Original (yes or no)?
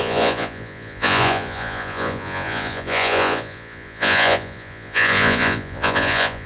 no